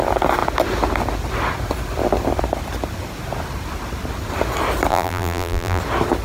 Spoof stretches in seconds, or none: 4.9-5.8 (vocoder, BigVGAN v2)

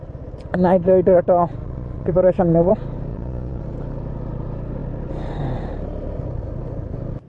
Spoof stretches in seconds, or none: 1.6-2.7 (vocoder, Vocos); 3.1-3.6

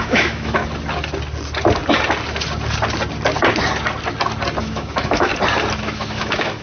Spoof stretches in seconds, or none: 0.0-0.6 (autoencoder, DAC-VAE); 4.6-5.3; 5.8-6.6

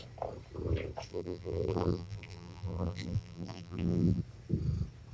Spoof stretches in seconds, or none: 1.1-4.2 (vocoder, BigVGAN v2)